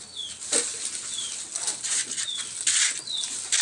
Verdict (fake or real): real